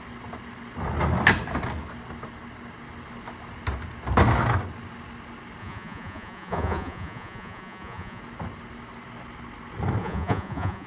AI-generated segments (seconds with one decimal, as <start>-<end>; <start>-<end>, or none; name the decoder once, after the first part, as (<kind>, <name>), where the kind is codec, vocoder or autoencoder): 5.6-8.2 (vocoder, Vocos); 10.0-10.9